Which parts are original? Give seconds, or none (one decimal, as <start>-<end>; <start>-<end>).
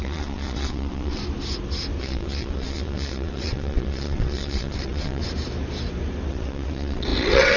1.2-2.0; 5.2-6.3